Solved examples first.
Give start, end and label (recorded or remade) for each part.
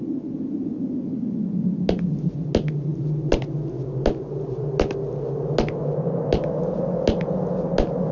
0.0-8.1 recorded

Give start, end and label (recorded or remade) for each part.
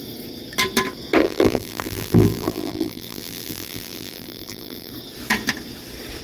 0.0-1.2 recorded; 1.2-4.9 remade; 4.9-6.2 recorded